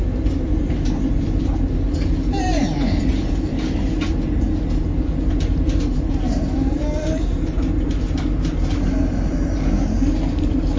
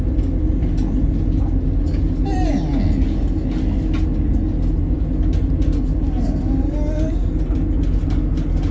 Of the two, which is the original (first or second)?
second